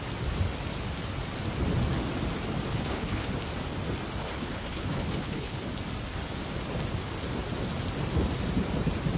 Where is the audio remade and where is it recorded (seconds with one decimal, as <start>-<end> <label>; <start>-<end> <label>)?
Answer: 0.0-2.7 recorded; 2.7-3.3 remade; 3.3-4.2 recorded; 4.2-5.7 remade; 5.7-9.2 recorded

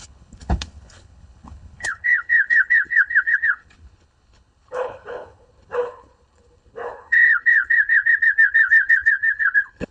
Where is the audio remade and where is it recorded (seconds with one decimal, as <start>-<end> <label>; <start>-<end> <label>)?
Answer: 0.0-9.9 remade

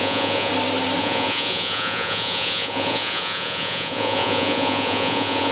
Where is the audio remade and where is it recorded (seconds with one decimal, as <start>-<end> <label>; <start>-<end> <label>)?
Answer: 0.0-0.5 remade; 0.5-1.0 recorded; 1.0-5.5 remade

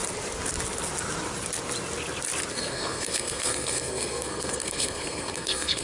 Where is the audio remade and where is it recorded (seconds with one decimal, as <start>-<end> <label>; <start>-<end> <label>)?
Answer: 0.0-2.5 recorded; 2.5-5.8 remade

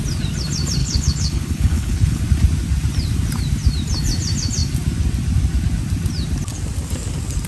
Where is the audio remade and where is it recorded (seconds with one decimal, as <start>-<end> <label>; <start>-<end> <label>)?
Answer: 0.0-0.8 recorded; 0.8-2.2 remade; 2.2-7.5 recorded